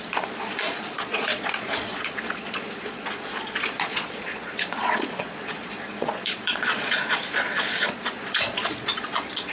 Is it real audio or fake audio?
fake